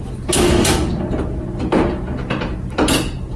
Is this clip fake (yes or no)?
no